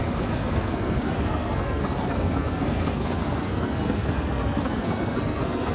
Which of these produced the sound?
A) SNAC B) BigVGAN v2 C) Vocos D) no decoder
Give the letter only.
A